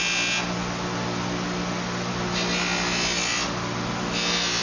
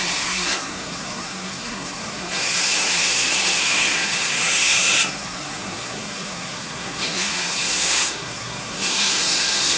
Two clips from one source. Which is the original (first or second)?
first